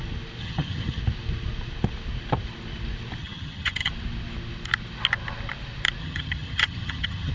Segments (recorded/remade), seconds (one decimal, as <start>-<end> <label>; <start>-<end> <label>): 0.0-0.4 recorded; 0.4-1.0 remade; 1.0-3.2 recorded; 3.2-3.9 remade; 3.9-6.0 recorded; 6.0-7.3 remade